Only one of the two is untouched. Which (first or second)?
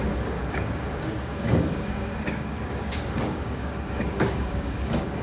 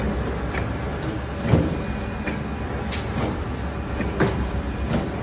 second